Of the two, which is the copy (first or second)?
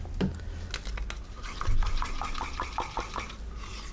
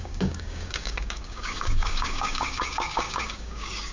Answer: second